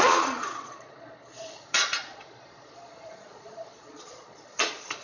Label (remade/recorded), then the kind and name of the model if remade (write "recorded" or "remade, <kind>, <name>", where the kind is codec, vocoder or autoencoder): remade, vocoder, Vocos